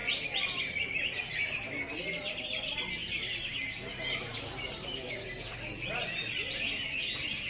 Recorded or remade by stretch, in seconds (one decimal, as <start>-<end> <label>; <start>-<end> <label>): 0.0-7.5 recorded